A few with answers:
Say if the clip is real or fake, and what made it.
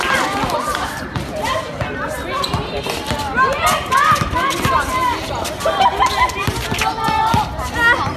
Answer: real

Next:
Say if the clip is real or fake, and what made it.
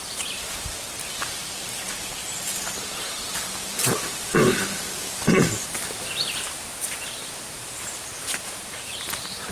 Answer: fake, vocoder, BigVGAN v2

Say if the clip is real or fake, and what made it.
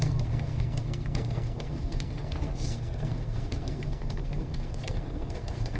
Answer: fake, codec, SNAC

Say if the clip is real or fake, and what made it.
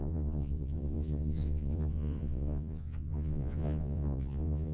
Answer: fake, vocoder, Vocos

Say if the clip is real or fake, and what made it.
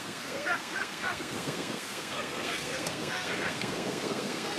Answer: fake, codec, SNAC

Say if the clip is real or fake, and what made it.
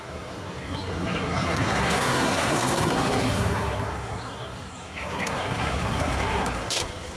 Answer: fake, codec, SNAC